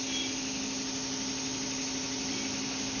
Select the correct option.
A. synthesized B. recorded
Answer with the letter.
B